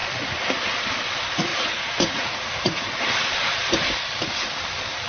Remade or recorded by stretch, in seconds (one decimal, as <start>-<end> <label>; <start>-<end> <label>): 0.0-1.5 recorded; 1.5-2.8 remade; 2.8-5.1 recorded

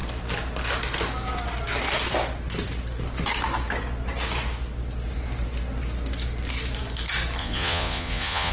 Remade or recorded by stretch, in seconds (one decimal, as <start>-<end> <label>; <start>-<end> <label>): 0.0-7.4 recorded; 7.4-8.5 remade

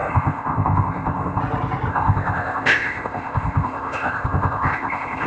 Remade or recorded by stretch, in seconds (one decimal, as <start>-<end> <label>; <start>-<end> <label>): 0.0-1.4 remade; 1.4-1.9 recorded; 1.9-5.3 remade

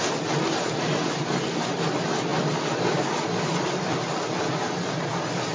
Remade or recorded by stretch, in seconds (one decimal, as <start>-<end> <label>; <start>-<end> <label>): 0.0-2.3 recorded; 2.3-4.8 remade; 4.8-5.5 recorded

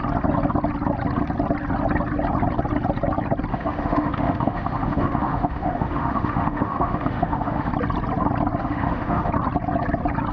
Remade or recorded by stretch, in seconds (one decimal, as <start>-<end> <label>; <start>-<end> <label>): 0.0-3.5 recorded; 3.5-7.7 remade; 7.7-8.6 recorded; 8.6-9.3 remade; 9.3-10.3 recorded

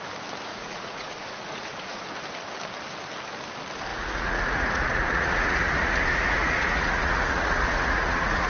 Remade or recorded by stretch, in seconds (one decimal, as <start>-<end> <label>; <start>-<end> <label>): 0.0-0.5 recorded; 0.5-2.0 remade; 2.0-3.9 recorded; 3.9-8.5 remade